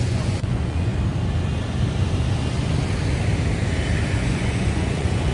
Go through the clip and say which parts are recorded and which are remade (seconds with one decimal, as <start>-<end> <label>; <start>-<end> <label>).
0.0-0.9 remade; 0.9-4.1 recorded; 4.1-5.3 remade